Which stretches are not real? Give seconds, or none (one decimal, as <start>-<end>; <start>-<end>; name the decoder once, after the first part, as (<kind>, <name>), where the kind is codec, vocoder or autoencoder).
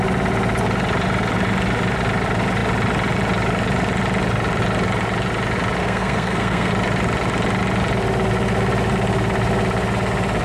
5.8-6.7 (codec, SNAC)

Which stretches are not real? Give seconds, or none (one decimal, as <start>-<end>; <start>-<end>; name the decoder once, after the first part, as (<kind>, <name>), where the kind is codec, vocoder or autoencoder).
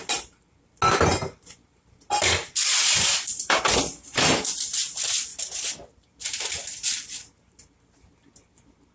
1.1-3.7 (vocoder, BigVGAN v2); 5.3-6.1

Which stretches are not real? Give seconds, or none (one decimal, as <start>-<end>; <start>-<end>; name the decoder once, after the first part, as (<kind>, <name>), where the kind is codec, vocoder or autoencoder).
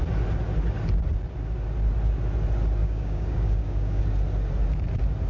2.8-4.0 (codec, DAC)